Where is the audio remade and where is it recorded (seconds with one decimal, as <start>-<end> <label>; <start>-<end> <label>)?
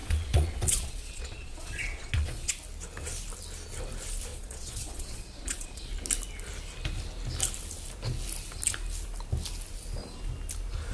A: 0.0-2.5 remade; 2.5-4.3 recorded; 4.3-5.9 remade; 5.9-10.9 recorded